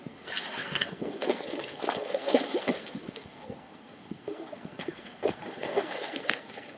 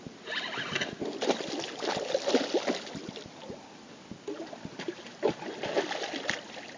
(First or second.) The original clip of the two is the second